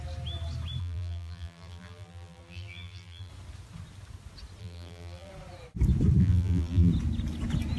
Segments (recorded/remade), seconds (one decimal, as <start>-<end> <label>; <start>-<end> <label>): 0.0-0.8 recorded; 0.8-3.3 remade; 3.3-4.6 recorded; 4.6-5.3 remade; 5.3-6.2 recorded; 6.2-6.9 remade; 6.9-7.8 recorded